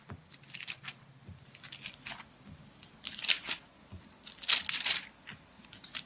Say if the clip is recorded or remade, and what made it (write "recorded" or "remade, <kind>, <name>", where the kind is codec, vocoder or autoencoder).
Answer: recorded